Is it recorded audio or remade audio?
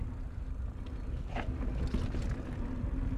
recorded